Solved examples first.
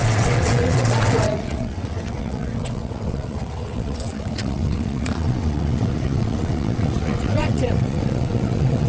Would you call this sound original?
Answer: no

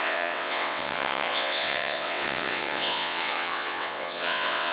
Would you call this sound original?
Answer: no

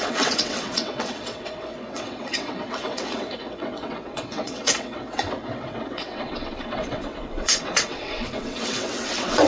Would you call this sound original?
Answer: no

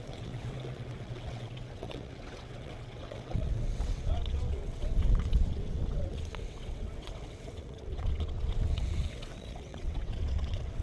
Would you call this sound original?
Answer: no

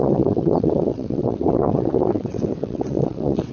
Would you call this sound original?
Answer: no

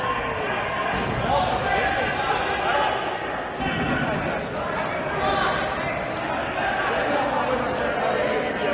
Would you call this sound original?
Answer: yes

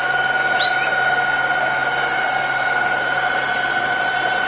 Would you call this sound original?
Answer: yes